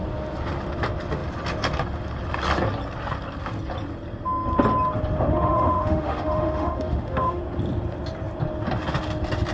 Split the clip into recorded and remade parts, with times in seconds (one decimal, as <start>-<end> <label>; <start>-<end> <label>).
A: 0.0-5.3 recorded; 5.3-7.4 remade; 7.4-9.5 recorded